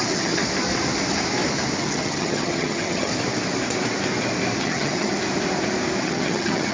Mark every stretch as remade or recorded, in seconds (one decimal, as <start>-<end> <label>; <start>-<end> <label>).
0.0-0.4 remade; 0.4-1.8 recorded; 1.8-3.1 remade; 3.1-4.6 recorded; 4.6-5.1 remade; 5.1-6.0 recorded; 6.0-6.7 remade